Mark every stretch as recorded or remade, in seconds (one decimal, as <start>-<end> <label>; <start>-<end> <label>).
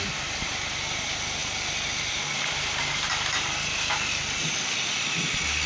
0.0-5.7 recorded